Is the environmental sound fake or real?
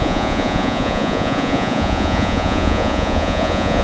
fake